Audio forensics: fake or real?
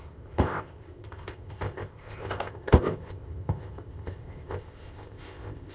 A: fake